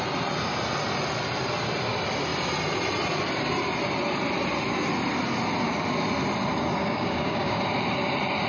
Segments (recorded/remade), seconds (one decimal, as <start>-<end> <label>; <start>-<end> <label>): 0.0-6.8 recorded; 6.8-7.6 remade; 7.6-8.5 recorded